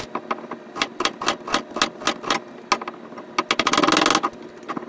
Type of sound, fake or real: real